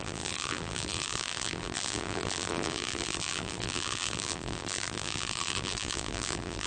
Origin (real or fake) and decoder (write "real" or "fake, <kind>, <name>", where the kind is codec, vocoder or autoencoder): fake, vocoder, BigVGAN v2